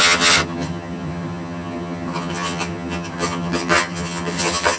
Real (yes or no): no